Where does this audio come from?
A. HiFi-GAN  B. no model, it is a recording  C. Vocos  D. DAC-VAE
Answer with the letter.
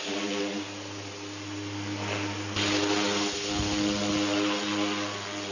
B